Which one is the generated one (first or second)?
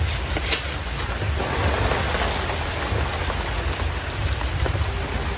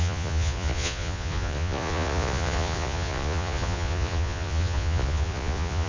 second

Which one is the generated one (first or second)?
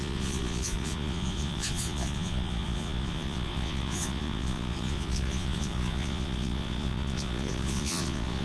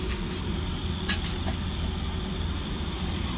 first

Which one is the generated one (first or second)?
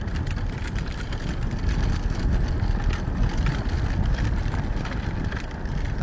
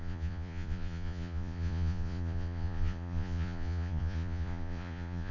second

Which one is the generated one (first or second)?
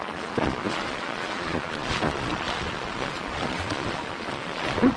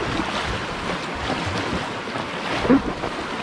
first